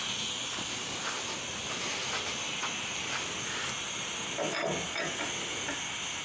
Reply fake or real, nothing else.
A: real